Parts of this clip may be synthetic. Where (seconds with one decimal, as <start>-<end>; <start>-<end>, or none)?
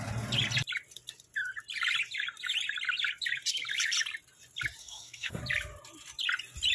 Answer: 4.8-5.4